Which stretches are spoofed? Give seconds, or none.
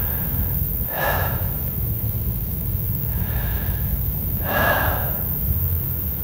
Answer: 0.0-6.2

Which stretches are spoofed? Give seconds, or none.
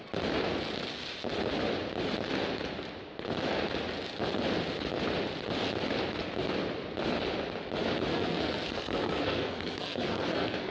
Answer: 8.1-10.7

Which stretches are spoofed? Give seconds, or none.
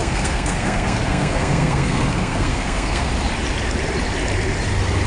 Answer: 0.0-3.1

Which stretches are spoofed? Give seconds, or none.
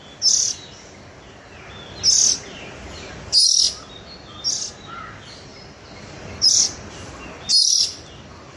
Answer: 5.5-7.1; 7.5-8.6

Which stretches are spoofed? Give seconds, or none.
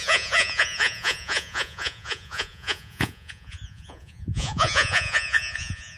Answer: 0.0-6.0